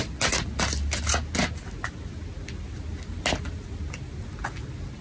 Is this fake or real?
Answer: real